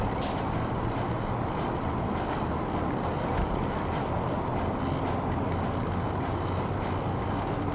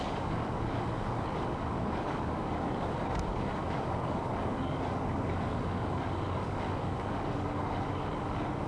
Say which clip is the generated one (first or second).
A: second